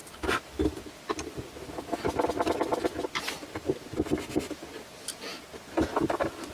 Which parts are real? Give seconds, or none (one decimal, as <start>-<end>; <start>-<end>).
0.0-6.5